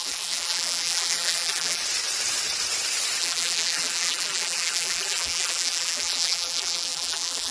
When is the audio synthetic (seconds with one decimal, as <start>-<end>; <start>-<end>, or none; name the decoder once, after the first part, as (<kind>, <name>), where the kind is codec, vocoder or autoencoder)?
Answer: 0.0-1.8 (vocoder, BigVGAN v2); 3.2-7.5